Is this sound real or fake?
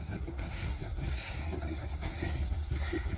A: fake